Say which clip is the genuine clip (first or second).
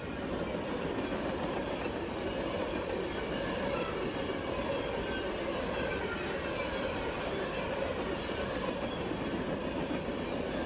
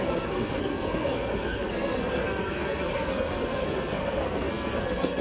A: first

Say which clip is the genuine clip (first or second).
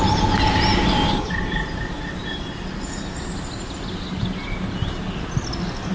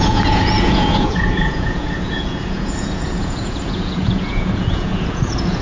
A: first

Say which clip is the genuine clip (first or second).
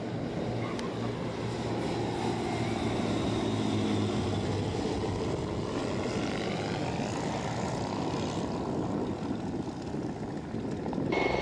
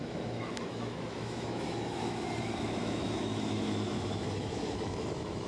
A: first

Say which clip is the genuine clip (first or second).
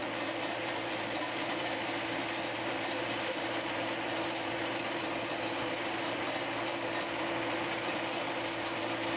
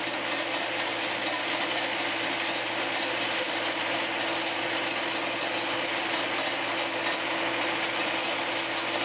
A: second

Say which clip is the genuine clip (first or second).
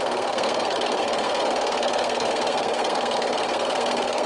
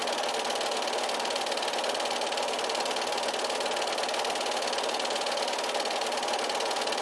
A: second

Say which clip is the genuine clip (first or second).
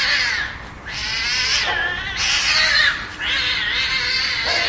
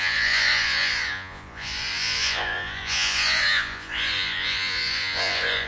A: first